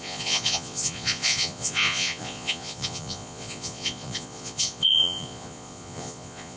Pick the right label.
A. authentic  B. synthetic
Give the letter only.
B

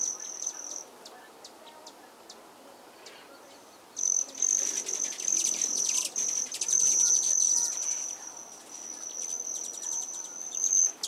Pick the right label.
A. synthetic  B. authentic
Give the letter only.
B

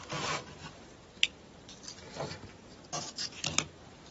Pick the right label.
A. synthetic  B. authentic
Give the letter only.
B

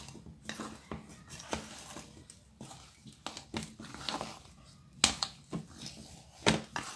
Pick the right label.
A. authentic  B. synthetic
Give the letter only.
A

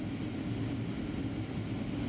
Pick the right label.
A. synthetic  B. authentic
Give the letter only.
B